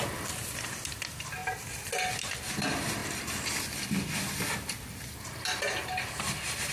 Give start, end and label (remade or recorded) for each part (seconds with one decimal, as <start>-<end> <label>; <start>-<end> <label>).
0.0-3.0 remade; 3.0-4.9 recorded; 4.9-6.7 remade